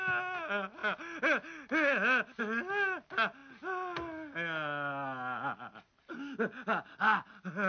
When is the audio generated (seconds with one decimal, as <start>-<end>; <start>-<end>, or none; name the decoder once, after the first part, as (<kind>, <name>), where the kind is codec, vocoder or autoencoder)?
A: none